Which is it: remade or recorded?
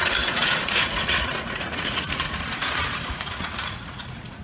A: remade